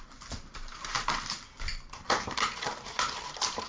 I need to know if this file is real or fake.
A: real